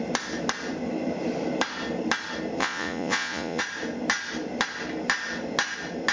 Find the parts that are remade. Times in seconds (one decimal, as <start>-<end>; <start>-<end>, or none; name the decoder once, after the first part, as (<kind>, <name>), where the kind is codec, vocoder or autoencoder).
2.6-3.6 (vocoder, Vocos)